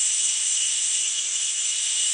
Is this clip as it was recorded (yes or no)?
no